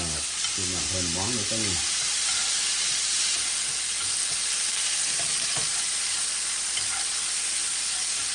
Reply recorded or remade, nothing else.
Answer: recorded